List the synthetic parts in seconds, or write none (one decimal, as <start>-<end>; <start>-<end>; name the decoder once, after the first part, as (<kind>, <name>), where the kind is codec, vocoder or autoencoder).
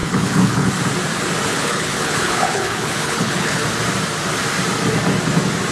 0.0-0.7 (codec, HILCodec); 1.5-3.6